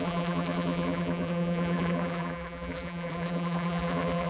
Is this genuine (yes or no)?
no